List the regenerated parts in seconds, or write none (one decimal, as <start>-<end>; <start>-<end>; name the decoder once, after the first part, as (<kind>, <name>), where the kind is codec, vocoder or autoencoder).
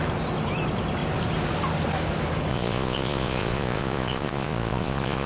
2.5-5.3 (vocoder, Vocos)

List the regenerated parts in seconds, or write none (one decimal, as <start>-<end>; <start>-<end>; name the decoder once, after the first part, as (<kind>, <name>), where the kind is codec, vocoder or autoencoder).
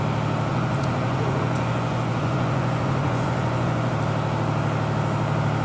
0.5-3.9 (vocoder, Vocos)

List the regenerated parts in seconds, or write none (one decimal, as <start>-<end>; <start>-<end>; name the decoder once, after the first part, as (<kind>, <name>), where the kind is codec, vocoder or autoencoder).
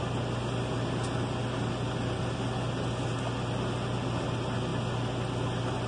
none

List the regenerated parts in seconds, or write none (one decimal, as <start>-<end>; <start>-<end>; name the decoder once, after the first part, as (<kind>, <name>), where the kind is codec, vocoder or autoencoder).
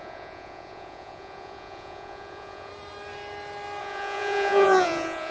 0.0-2.7 (vocoder, Vocos); 3.8-5.3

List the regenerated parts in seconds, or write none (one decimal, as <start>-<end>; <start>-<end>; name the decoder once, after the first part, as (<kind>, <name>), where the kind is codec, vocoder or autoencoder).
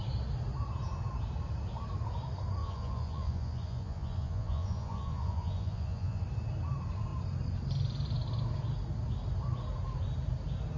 2.6-6.2 (vocoder, Vocos)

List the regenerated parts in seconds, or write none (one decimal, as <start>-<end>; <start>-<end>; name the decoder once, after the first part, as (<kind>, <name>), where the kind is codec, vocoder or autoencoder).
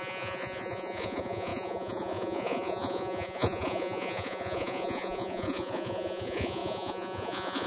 0.0-7.7 (vocoder, Vocos)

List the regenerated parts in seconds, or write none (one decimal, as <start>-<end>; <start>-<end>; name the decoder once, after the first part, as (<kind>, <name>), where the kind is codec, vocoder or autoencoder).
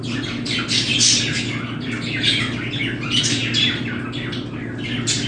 none